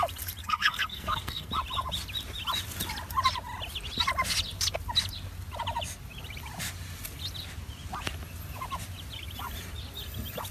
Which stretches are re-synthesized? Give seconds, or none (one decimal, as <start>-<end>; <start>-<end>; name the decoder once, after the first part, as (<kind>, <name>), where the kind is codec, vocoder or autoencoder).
0.4-1.5 (codec, SNAC)